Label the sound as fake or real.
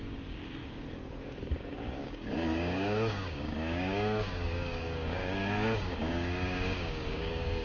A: fake